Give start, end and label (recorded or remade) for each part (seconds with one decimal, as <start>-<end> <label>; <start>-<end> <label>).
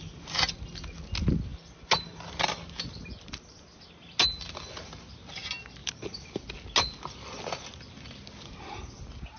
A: 0.0-5.8 recorded; 5.8-6.5 remade; 6.5-9.4 recorded